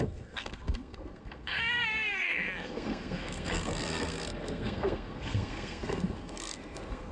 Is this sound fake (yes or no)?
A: yes